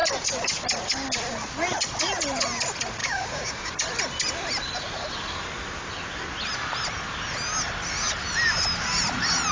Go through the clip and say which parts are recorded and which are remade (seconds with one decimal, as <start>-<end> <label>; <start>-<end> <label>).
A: 0.0-3.0 recorded; 3.0-3.7 remade; 3.7-9.5 recorded